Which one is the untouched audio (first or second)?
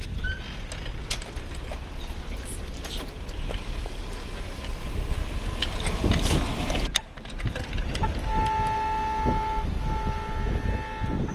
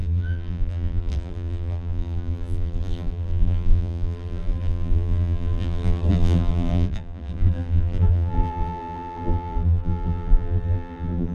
first